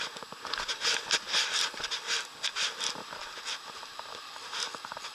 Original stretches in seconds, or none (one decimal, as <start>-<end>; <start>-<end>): 0.0-3.2; 4.2-5.1